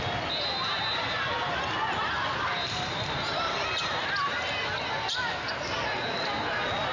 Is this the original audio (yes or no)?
yes